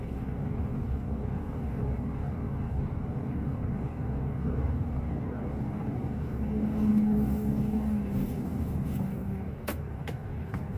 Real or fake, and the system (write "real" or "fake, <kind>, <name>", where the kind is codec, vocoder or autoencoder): fake, codec, DAC